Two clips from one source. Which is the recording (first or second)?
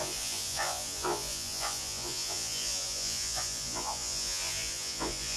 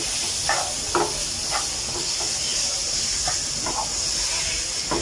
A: second